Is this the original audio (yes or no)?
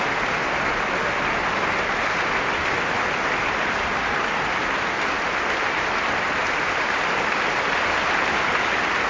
yes